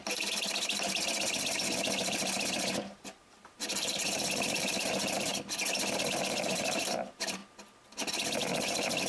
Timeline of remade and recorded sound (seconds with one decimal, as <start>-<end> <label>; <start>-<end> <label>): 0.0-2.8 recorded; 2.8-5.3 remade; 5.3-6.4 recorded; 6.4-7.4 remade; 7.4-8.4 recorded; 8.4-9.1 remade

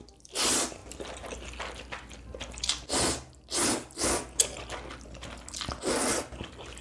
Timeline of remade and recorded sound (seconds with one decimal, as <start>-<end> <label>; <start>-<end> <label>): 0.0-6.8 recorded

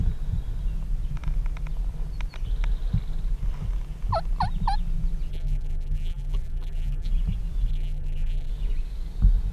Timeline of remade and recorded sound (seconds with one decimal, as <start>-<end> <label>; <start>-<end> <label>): 0.0-5.3 recorded; 5.3-7.1 remade; 7.1-7.7 recorded; 7.7-8.5 remade; 8.5-9.5 recorded

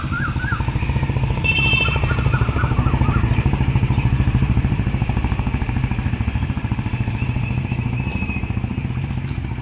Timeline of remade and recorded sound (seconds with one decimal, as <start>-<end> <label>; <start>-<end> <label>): 0.0-9.6 remade